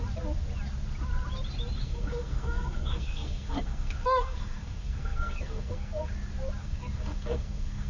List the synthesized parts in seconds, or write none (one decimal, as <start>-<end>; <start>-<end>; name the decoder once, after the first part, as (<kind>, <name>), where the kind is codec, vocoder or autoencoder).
1.8-6.1 (codec, SNAC); 6.6-7.9